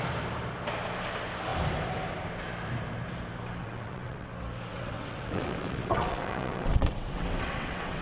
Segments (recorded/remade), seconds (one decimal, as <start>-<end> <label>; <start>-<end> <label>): 0.0-3.6 recorded; 3.6-4.3 remade; 4.3-4.7 recorded; 4.7-8.0 remade